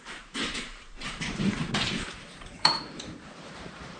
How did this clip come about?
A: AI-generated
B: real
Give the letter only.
A